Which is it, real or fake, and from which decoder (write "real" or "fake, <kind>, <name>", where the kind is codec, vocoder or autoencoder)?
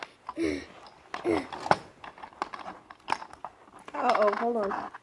real